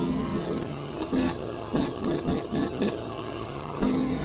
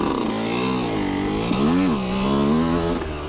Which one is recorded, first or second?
second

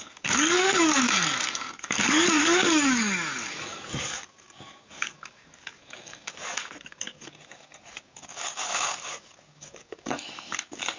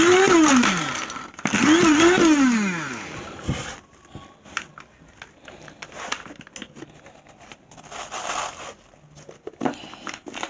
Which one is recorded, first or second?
second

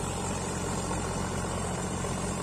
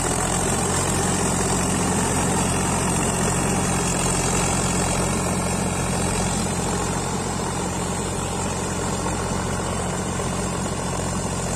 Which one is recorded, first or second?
second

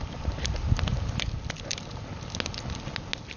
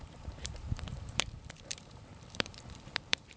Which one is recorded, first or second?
first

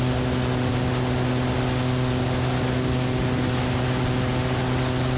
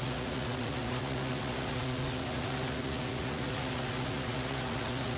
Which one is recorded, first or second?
first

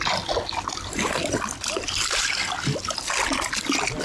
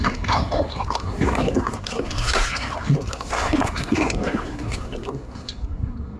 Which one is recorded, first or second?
first